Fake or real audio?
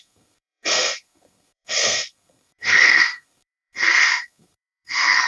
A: fake